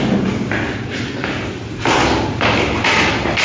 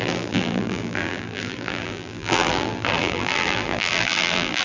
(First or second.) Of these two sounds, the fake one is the second